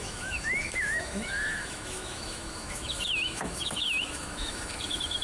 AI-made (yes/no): yes